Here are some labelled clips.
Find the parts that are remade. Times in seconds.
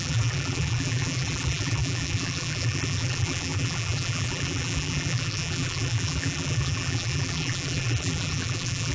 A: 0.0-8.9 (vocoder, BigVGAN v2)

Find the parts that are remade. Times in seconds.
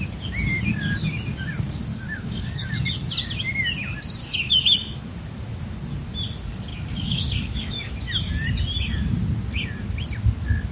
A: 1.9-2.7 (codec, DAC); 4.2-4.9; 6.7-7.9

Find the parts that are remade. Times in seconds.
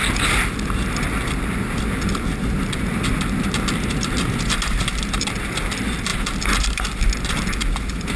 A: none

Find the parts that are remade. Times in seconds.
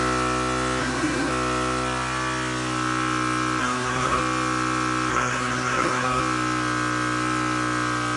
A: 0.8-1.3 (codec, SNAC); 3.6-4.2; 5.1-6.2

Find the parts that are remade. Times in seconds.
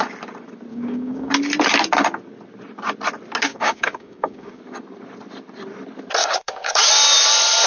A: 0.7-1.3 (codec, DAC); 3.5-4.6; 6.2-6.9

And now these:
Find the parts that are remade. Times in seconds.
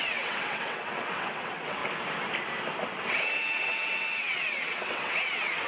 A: 0.0-1.8 (vocoder, WaveNeXt); 3.1-5.7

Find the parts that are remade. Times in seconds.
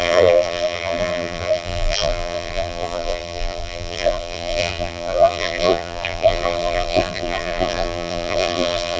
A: 0.0-9.0 (vocoder, BigVGAN v2)